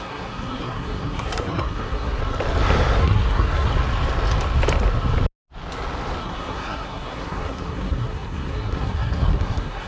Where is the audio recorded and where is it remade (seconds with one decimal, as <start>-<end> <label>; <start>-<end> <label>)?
0.0-2.2 remade; 2.2-3.0 recorded; 3.0-3.7 remade; 3.7-6.2 recorded; 6.2-9.9 remade